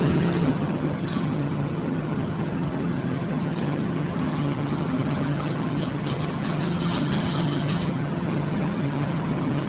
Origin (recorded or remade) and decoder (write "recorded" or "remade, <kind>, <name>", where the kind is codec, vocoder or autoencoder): remade, vocoder, HiFi-GAN